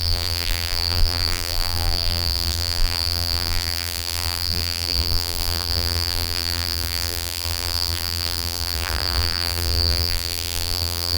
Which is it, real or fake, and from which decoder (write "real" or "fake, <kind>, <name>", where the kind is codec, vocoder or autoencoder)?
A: fake, vocoder, BigVGAN v2